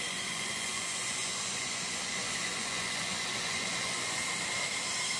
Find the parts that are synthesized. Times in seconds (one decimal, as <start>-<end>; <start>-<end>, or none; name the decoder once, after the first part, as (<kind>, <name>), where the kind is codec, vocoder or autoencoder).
0.0-4.2 (vocoder, Vocos)